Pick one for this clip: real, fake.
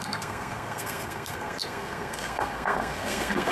fake